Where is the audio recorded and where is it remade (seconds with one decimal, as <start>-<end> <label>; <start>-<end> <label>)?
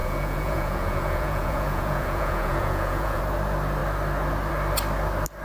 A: 0.0-3.2 remade; 3.2-5.4 recorded